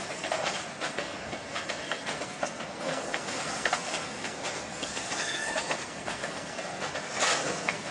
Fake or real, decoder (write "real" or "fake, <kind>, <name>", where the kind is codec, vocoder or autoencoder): fake, codec, SNAC